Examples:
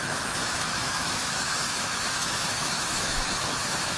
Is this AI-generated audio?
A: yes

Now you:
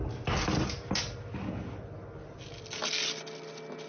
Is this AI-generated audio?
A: no